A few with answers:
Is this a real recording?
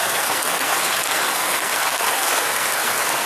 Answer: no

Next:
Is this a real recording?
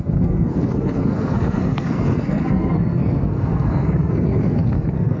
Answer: no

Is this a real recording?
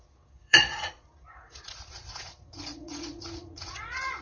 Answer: no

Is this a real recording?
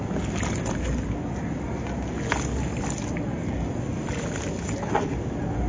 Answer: yes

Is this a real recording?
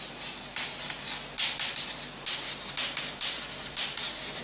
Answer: yes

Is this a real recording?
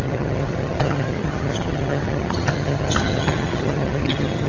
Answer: no